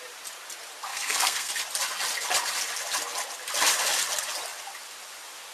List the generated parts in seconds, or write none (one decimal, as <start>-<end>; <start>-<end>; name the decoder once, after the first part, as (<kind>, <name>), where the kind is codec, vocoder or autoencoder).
0.9-1.5 (codec, SNAC)